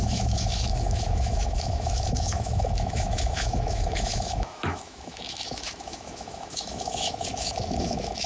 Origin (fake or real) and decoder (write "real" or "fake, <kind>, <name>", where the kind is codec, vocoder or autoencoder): fake, autoencoder, DAC-VAE